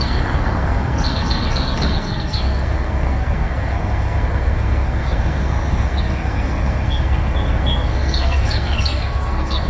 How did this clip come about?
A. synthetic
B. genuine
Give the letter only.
A